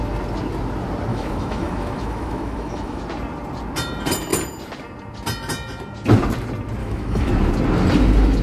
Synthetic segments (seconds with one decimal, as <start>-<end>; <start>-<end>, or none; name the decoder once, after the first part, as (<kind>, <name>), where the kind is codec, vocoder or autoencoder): 1.1-3.0 (autoencoder, DAC-VAE); 6.8-7.3